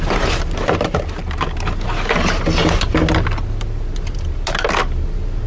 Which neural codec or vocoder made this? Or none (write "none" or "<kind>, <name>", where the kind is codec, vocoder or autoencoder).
none